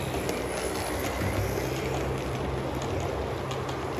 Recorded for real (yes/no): yes